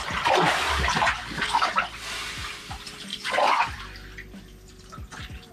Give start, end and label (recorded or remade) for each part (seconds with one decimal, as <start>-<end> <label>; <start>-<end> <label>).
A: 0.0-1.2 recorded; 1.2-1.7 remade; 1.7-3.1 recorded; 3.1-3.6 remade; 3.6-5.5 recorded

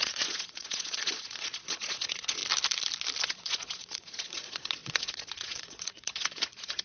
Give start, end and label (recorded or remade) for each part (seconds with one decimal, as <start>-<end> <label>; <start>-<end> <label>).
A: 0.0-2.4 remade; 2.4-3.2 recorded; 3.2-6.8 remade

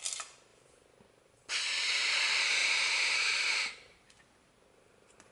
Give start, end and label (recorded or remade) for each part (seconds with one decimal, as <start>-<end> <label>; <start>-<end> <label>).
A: 0.0-2.6 recorded; 2.6-4.5 remade; 4.5-5.3 recorded

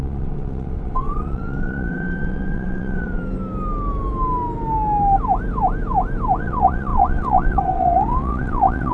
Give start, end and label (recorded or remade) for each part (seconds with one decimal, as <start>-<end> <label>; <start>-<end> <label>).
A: 0.0-3.2 remade; 3.2-6.4 recorded; 6.4-8.9 remade

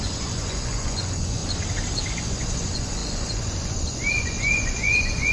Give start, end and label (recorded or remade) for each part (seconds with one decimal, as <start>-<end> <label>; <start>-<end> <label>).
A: 0.0-1.4 remade; 1.4-2.1 recorded; 2.1-5.3 remade

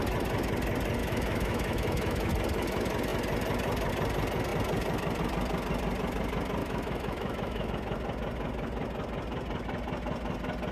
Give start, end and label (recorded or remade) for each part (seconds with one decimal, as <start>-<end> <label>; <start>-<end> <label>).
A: 0.0-1.0 recorded; 1.0-2.3 remade; 2.3-6.6 recorded; 6.6-7.7 remade; 7.7-10.7 recorded